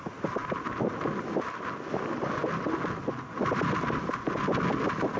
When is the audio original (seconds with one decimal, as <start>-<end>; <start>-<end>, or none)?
0.0-5.2